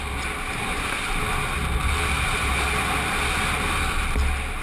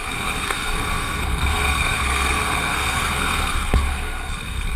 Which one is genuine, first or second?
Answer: first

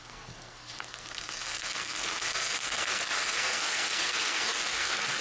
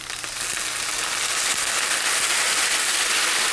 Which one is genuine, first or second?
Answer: second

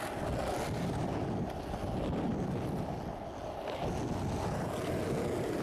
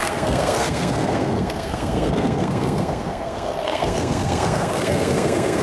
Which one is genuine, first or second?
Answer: first